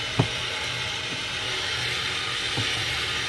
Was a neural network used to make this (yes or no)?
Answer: no